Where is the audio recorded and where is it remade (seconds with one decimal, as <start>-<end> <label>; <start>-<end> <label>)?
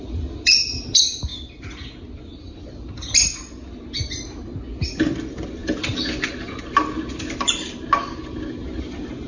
0.0-9.3 recorded